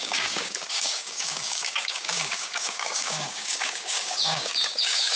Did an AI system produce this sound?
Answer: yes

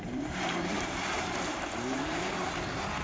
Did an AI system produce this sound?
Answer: yes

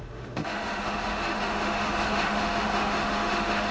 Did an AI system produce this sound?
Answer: yes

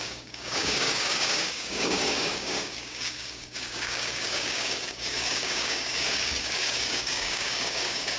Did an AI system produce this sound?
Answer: yes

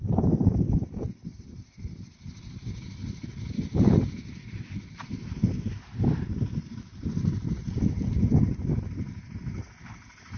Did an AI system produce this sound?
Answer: no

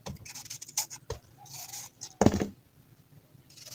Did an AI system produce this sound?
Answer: no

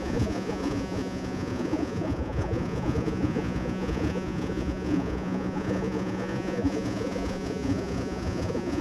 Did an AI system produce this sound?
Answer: yes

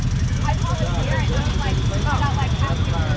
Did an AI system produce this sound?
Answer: no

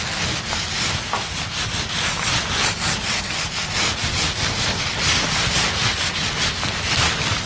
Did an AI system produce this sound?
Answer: no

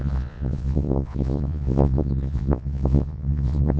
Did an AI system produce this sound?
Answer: yes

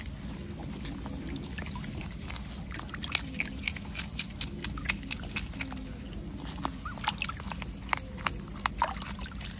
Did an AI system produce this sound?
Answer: no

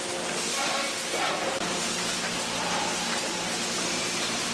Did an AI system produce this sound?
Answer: no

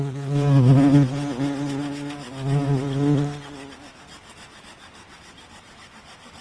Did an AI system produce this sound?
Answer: no